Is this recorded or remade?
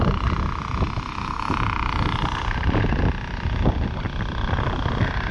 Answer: recorded